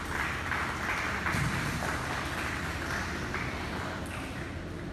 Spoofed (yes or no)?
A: no